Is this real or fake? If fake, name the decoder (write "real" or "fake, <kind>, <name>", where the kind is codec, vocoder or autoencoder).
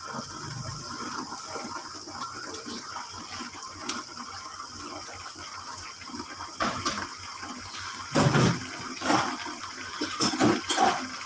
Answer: real